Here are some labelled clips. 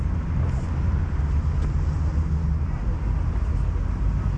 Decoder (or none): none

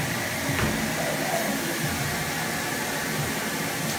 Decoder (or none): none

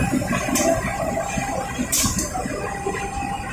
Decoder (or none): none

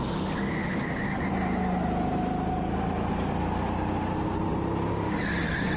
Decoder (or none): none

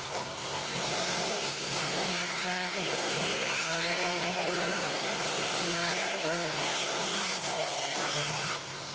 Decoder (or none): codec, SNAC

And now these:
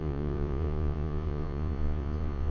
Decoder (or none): vocoder, Vocos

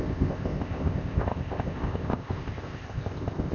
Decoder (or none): codec, ZipCodec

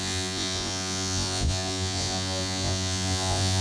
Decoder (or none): vocoder, Vocos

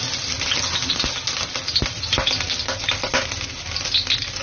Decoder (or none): none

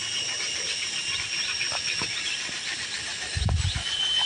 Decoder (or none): none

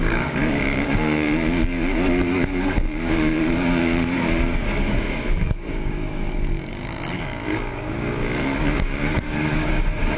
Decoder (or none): codec, DAC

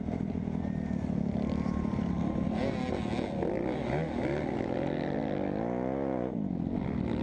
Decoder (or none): none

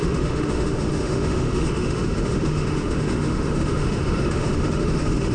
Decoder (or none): autoencoder, DAC-VAE